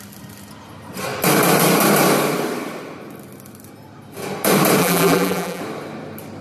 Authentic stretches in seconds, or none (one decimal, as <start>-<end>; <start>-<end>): 0.0-4.8; 5.6-6.4

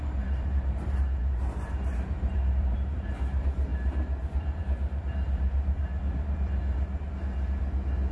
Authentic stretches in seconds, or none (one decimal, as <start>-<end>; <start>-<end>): 5.8-8.1

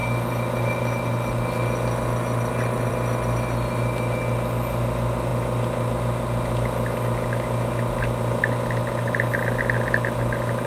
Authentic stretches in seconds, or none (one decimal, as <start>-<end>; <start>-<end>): 0.0-10.7

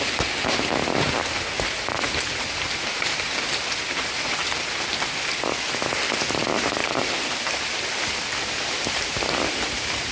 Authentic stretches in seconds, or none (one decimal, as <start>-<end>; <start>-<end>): 0.0-6.8; 9.3-10.1

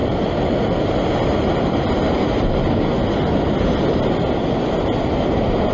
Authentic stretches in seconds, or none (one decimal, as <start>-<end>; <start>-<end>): 0.8-5.7

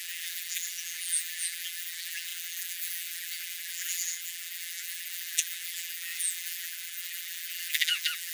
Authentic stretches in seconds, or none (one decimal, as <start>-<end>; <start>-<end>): none

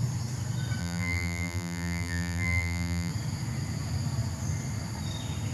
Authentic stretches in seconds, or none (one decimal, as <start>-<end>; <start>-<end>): 0.0-0.8; 3.1-5.5

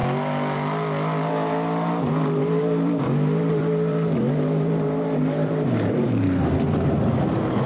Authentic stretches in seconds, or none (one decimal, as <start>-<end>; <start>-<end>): 0.0-2.1